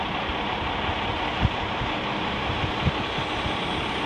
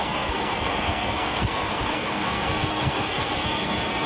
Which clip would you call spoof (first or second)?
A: second